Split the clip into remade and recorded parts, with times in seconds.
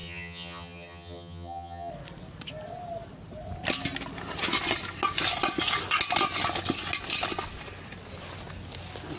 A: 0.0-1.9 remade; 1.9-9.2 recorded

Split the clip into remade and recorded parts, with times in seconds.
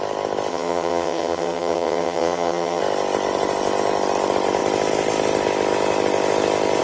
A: 0.0-0.5 recorded; 0.5-2.8 remade; 2.8-6.8 recorded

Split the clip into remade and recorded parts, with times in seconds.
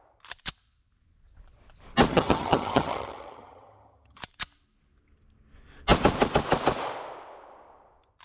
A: 0.0-2.1 recorded; 2.1-4.2 remade; 4.2-8.2 recorded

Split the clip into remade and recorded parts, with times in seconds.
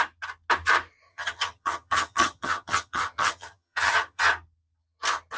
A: 0.0-1.1 recorded; 1.1-4.3 remade; 4.3-5.4 recorded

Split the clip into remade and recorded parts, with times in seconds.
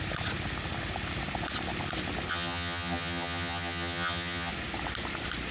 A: 0.0-2.3 recorded; 2.3-4.5 remade; 4.5-5.5 recorded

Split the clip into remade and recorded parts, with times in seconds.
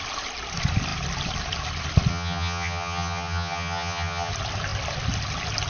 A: 0.0-2.1 recorded; 2.1-4.3 remade; 4.3-5.7 recorded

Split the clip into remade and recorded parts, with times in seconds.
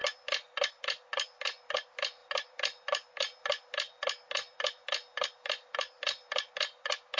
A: 0.0-7.2 recorded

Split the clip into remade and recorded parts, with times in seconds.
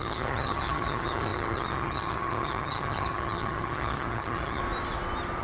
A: 0.0-4.6 remade; 4.6-5.4 recorded